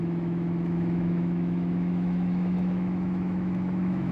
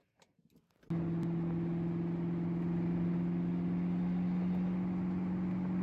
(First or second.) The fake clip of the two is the first